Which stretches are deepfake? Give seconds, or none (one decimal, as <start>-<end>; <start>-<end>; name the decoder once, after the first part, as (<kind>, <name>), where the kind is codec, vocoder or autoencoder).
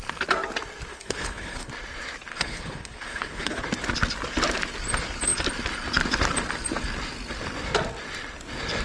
0.9-1.7 (codec, HILCodec); 2.3-3.6